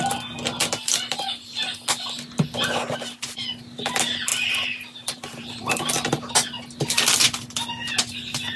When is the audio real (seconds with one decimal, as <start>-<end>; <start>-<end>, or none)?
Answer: 0.0-4.3; 5.9-8.6